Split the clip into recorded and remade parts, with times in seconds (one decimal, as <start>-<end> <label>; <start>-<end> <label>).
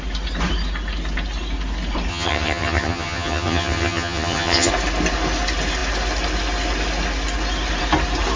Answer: 0.0-2.1 recorded; 2.1-4.7 remade; 4.7-8.4 recorded